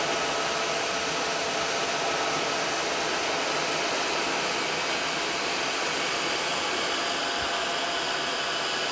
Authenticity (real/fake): real